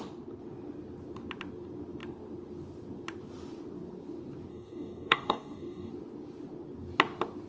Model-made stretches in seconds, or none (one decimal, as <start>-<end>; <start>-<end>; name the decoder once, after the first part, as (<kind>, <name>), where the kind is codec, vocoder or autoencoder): 4.5-5.9 (codec, DAC)